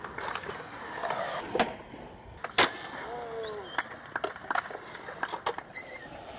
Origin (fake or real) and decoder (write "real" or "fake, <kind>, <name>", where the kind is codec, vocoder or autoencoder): real